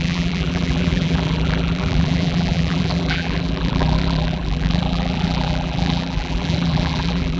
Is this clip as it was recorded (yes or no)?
no